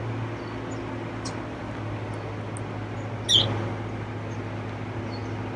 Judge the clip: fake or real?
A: real